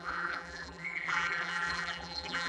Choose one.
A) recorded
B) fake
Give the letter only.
B